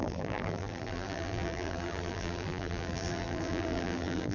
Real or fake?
fake